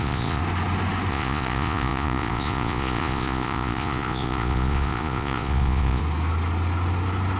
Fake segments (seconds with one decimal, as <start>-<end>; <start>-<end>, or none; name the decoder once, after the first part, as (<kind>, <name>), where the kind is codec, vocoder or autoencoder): 0.0-0.4 (vocoder, Vocos); 1.1-6.0